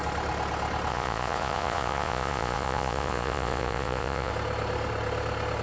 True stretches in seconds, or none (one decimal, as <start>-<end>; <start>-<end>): 0.0-0.9; 4.3-5.6